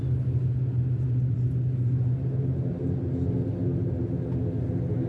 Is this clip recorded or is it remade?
recorded